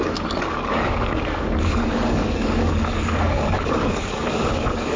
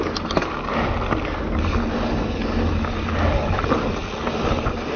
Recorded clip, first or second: second